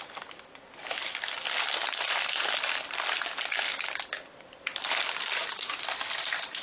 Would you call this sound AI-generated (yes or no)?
no